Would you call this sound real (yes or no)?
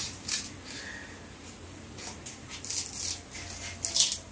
yes